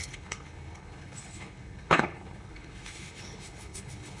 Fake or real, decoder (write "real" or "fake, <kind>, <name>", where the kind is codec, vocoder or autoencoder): fake, codec, HILCodec